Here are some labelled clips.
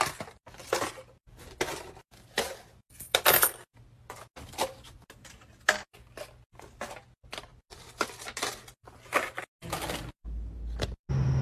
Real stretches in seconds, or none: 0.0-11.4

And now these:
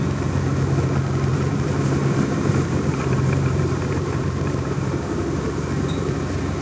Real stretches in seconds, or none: 0.0-1.3; 5.2-6.6

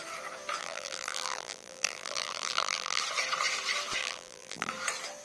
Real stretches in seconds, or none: 0.0-0.6; 3.0-4.0; 4.7-5.2

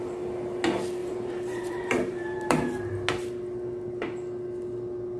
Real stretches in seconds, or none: 0.0-1.0; 2.9-5.2

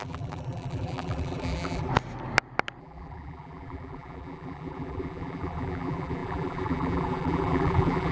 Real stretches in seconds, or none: 1.9-2.8

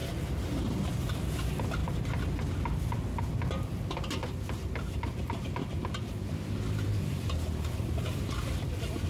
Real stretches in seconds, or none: 1.8-3.3

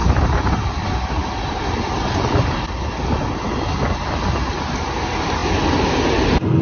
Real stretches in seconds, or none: 0.6-1.2; 2.3-6.6